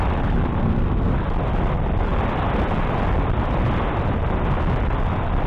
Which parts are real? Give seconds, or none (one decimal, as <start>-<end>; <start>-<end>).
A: 0.0-0.6; 1.1-5.5